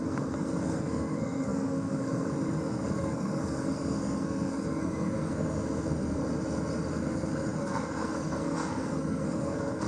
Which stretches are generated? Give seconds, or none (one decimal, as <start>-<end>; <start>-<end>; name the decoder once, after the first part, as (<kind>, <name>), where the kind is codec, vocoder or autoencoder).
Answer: 0.0-6.2 (codec, SNAC); 6.9-9.9